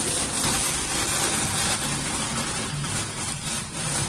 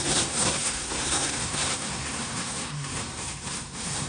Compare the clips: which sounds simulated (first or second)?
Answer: second